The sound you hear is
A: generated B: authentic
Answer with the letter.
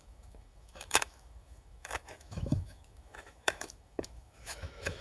A